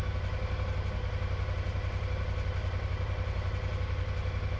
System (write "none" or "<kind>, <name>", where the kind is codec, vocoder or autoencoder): none